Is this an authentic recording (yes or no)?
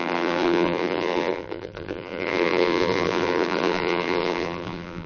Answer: no